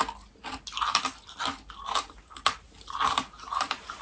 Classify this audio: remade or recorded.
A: recorded